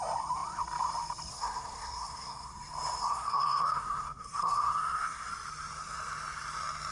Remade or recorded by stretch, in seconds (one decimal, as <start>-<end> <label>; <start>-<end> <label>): 0.0-1.3 recorded; 1.3-2.5 remade; 2.5-3.0 recorded; 3.0-5.3 remade; 5.3-6.9 recorded